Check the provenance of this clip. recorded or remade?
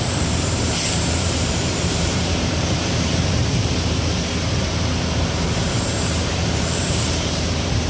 remade